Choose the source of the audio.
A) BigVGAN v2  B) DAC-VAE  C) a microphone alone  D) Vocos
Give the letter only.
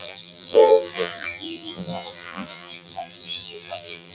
A